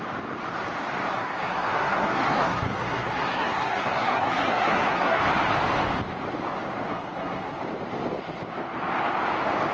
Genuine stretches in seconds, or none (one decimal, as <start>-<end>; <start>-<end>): 0.0-1.1; 5.2-6.9; 7.6-9.7